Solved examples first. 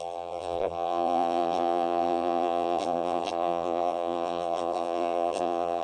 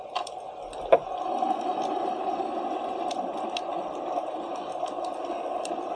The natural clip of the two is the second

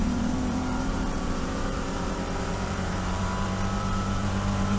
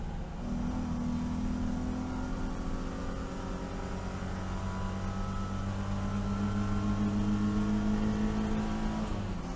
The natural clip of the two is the second